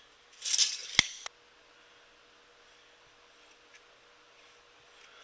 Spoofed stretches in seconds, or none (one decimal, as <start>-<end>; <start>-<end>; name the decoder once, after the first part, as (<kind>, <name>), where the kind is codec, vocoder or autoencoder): none